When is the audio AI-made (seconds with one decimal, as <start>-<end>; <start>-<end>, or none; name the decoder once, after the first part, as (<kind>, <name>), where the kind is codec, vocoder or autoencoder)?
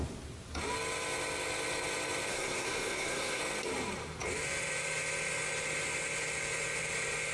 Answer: 2.3-3.4 (codec, SNAC)